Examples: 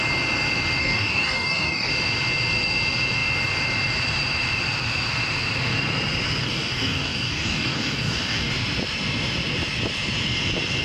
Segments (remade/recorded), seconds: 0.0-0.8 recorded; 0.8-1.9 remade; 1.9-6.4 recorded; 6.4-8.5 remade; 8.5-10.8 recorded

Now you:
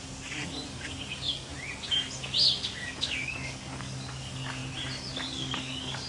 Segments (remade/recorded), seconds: 0.0-1.5 remade; 1.5-2.6 recorded; 2.6-4.6 remade; 4.6-5.1 recorded; 5.1-6.1 remade

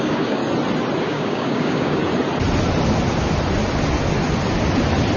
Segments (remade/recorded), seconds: 0.0-0.4 remade; 0.4-1.0 recorded; 1.0-2.0 remade; 2.0-5.2 recorded

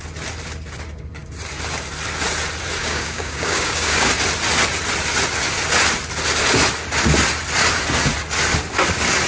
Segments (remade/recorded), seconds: 0.0-2.8 recorded; 2.8-4.1 remade; 4.1-9.3 recorded

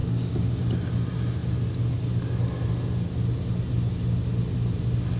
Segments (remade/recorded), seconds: 0.0-0.6 remade; 0.6-5.2 recorded

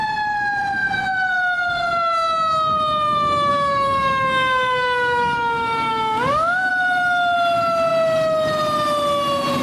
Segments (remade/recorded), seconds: 0.0-3.5 recorded; 3.5-6.7 remade; 6.7-9.6 recorded